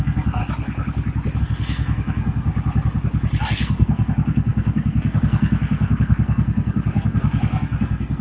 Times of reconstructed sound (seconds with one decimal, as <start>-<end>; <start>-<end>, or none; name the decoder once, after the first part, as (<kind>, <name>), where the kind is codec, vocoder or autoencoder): 0.0-0.4 (codec, SNAC); 1.4-2.5; 3.4-8.2